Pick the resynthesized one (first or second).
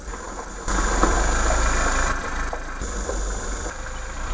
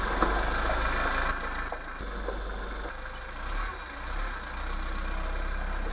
first